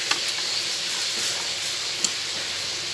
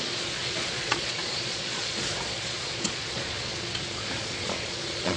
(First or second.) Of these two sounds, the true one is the first